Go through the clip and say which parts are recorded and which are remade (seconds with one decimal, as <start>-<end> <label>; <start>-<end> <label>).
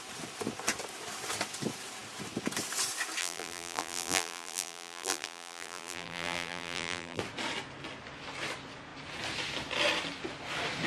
0.0-3.2 recorded; 3.2-7.2 remade; 7.2-10.9 recorded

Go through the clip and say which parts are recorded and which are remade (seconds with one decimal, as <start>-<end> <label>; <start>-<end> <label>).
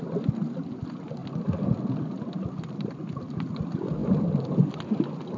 0.0-5.4 recorded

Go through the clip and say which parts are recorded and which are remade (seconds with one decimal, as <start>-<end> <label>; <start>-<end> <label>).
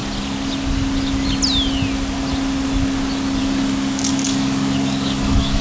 0.0-3.4 recorded; 3.4-5.6 remade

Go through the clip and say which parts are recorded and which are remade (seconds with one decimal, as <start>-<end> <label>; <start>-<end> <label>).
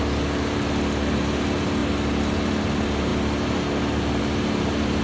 0.0-5.0 recorded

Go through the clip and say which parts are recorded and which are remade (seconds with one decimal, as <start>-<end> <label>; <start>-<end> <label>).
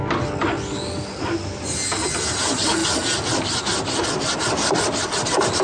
0.0-5.6 recorded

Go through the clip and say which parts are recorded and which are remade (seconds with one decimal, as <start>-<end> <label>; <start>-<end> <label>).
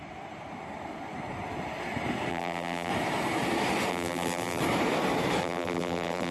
0.0-2.3 recorded; 2.3-2.9 remade; 2.9-3.9 recorded; 3.9-4.6 remade; 4.6-5.4 recorded; 5.4-6.3 remade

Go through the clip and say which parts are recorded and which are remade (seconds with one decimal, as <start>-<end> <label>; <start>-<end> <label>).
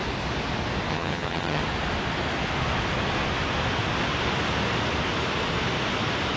0.0-0.9 recorded; 0.9-1.6 remade; 1.6-6.4 recorded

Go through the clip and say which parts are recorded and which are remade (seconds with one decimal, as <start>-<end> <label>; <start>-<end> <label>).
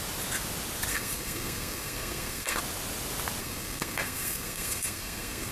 0.0-0.9 recorded; 0.9-2.6 remade; 2.6-3.4 recorded; 3.4-5.5 remade